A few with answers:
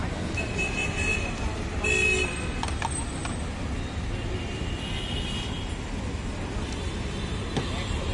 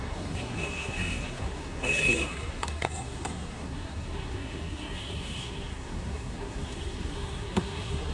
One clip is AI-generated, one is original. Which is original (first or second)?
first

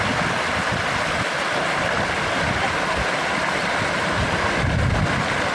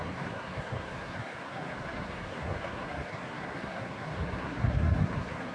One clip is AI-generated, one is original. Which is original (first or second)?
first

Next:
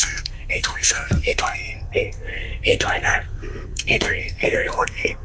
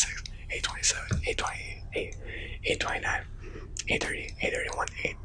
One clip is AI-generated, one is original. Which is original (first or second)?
second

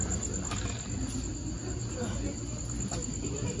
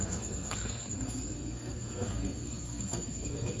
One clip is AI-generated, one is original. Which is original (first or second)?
first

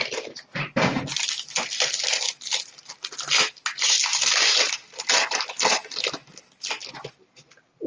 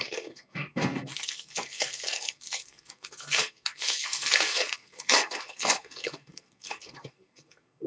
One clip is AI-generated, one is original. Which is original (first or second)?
first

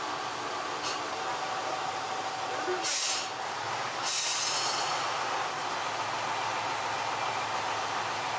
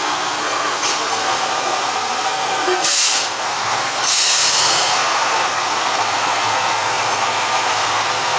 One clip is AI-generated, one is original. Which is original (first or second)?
first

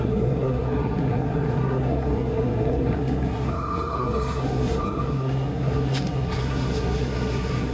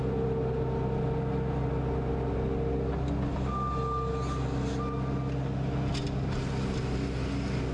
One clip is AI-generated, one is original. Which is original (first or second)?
second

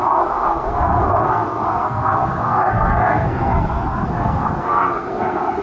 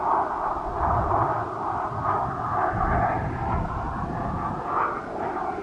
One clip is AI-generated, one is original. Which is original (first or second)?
second